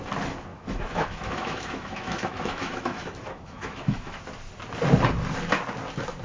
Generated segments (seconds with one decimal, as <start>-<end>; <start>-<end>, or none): 0.5-4.2